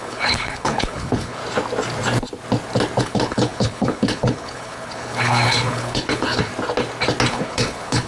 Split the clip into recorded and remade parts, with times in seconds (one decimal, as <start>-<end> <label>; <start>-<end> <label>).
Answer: 0.0-1.4 remade; 1.4-3.0 recorded; 3.0-6.5 remade; 6.5-7.3 recorded; 7.3-8.1 remade